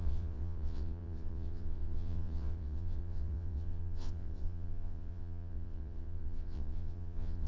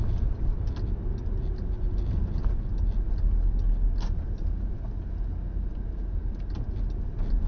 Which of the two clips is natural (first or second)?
second